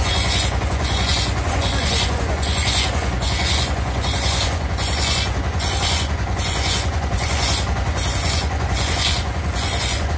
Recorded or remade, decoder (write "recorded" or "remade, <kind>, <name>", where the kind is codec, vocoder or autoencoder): remade, vocoder, Vocos